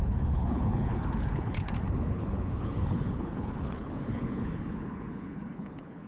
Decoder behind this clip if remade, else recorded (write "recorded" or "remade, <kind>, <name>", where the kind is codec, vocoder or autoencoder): remade, codec, HILCodec